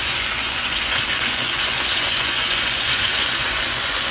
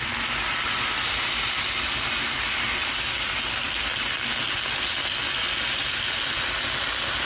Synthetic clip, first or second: first